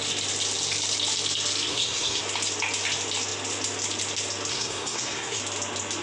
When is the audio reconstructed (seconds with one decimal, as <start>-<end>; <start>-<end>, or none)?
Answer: 1.7-2.2; 4.5-5.4